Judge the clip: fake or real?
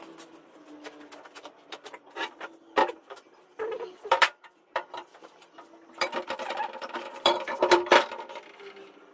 fake